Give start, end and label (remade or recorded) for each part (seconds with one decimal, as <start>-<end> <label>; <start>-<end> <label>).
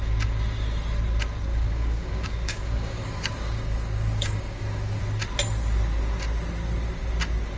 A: 0.0-1.5 recorded; 1.5-5.0 remade; 5.0-7.6 recorded